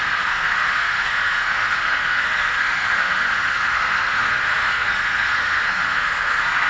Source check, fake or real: fake